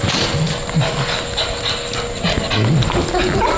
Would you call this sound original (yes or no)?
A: yes